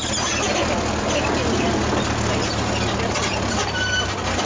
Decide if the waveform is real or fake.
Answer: real